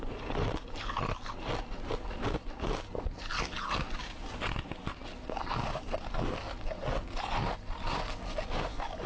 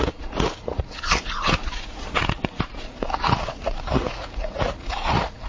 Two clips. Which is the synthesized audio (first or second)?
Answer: second